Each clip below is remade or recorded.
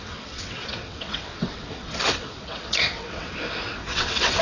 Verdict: remade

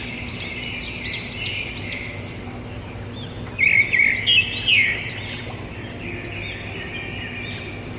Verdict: recorded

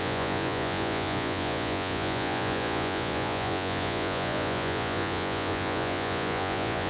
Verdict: remade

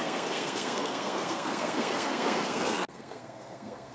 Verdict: remade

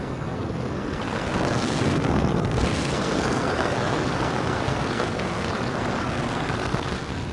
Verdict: remade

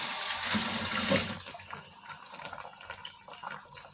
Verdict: recorded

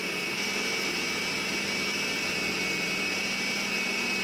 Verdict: recorded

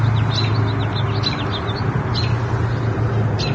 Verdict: recorded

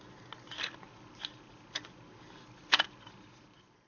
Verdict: recorded